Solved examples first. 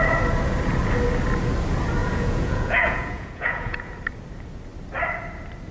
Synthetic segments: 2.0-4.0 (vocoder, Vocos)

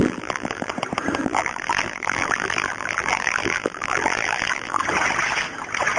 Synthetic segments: 0.0-0.7 (vocoder, BigVGAN v2); 1.2-4.8

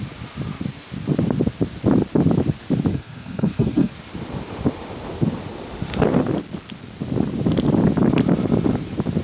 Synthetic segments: 2.9-3.9 (codec, SNAC)

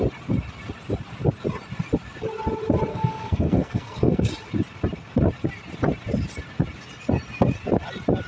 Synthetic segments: 2.9-4.3 (codec, SNAC)